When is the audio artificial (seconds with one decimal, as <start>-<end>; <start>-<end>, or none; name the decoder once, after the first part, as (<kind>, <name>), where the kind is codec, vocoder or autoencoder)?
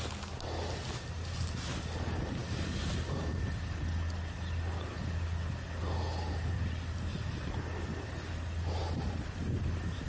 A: 2.4-3.5 (vocoder, BigVGAN v2)